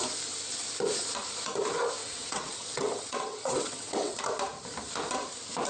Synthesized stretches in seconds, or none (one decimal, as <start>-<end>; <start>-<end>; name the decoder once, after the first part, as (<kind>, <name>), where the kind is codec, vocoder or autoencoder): 2.0-4.2 (vocoder, WaveNeXt)